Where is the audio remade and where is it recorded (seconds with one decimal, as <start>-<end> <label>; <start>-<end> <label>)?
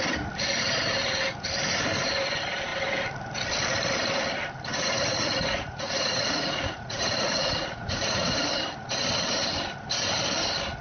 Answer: 0.0-4.7 recorded; 4.7-8.5 remade; 8.5-10.8 recorded